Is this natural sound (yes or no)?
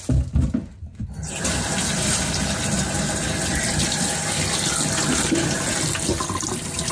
yes